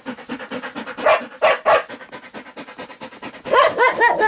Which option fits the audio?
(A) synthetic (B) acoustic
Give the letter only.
B